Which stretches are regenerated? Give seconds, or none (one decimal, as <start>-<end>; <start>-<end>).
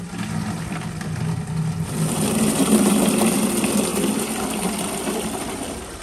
none